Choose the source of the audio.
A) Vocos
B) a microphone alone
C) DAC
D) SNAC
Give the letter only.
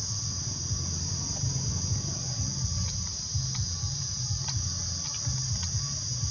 B